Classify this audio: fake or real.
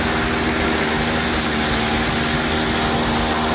real